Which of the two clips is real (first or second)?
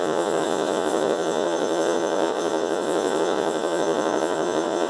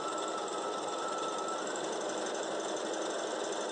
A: second